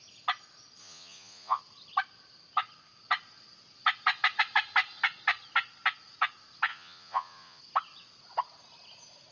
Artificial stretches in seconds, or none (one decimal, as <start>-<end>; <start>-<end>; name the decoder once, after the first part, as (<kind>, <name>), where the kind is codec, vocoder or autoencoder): 0.8-1.6 (vocoder, Vocos); 6.7-7.6